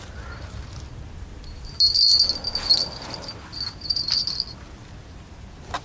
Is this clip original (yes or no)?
yes